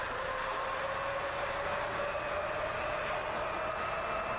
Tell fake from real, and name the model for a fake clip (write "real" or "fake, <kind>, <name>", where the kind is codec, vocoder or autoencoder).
real